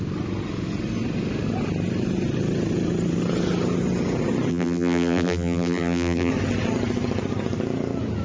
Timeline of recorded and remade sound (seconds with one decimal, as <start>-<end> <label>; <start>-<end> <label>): 0.0-4.5 recorded; 4.5-6.3 remade; 6.3-8.2 recorded